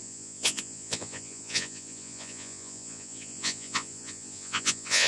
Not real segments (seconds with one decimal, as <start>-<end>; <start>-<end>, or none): 0.0-5.1